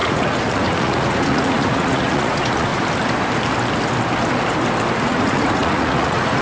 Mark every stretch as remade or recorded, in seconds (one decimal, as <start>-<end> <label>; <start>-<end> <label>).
0.0-2.7 remade; 2.7-5.0 recorded; 5.0-6.4 remade